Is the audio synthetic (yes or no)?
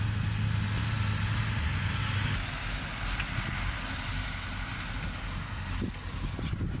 no